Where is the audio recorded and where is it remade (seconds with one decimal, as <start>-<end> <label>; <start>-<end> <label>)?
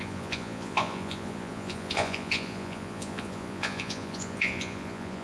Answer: 0.0-5.2 remade